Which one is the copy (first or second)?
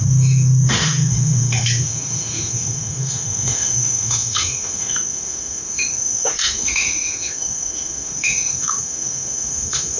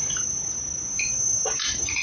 first